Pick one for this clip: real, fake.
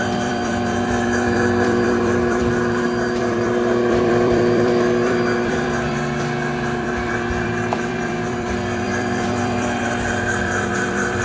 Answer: fake